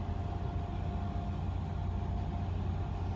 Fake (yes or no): no